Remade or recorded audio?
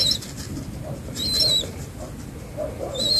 recorded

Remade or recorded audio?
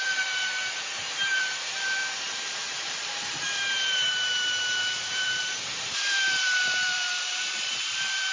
remade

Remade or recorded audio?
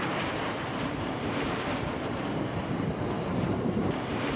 remade